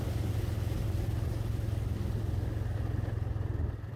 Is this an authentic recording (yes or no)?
yes